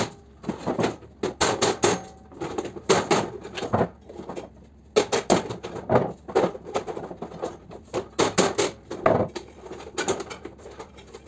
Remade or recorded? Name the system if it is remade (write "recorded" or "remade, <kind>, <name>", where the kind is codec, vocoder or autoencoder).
recorded